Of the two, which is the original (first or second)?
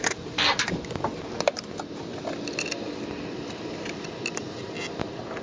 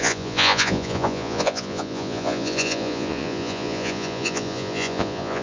first